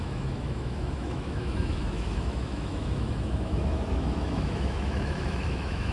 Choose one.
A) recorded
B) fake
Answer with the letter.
B